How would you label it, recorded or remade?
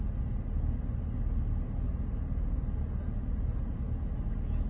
recorded